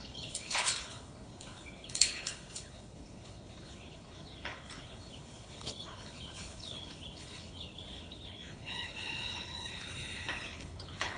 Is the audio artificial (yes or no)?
yes